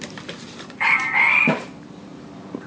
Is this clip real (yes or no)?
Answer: no